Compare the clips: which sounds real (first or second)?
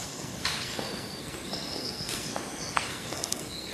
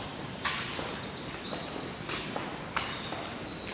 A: second